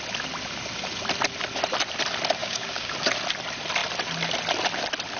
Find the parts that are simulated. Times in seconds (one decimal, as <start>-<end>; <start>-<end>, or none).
2.4-2.9